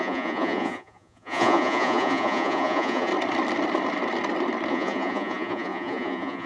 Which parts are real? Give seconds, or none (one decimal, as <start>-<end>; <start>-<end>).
3.1-4.7